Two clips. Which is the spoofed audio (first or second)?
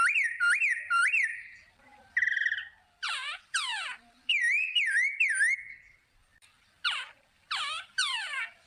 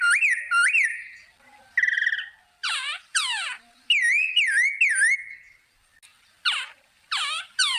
first